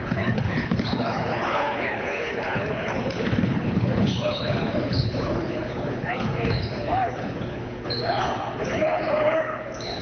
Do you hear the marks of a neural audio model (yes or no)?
yes